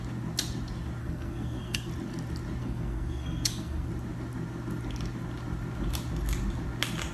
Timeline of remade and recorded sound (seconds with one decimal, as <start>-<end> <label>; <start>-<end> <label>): 0.0-1.0 recorded; 1.0-1.9 remade; 1.9-2.6 recorded; 2.6-3.9 remade; 3.9-7.1 recorded